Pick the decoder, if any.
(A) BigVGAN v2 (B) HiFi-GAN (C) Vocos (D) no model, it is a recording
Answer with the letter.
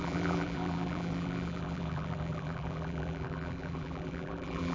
A